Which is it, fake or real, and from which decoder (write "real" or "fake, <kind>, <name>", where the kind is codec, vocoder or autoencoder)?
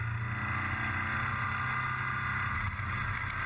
real